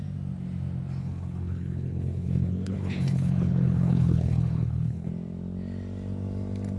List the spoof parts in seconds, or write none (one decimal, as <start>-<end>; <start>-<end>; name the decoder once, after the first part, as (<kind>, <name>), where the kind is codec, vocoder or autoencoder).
1.0-5.1 (codec, HILCodec)